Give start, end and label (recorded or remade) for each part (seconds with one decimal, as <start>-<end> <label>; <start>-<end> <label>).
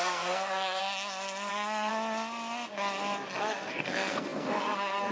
0.0-0.8 remade; 0.8-1.5 recorded; 1.5-1.9 remade; 1.9-3.4 recorded; 3.4-5.1 remade